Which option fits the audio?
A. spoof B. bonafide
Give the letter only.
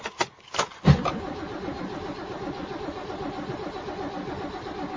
B